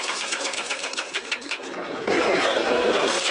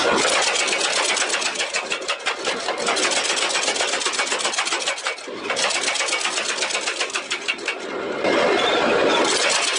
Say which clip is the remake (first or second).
first